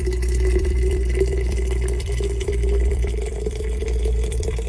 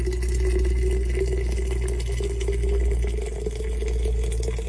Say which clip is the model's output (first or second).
first